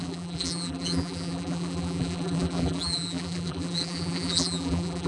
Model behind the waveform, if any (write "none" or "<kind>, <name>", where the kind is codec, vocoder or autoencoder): vocoder, BigVGAN v2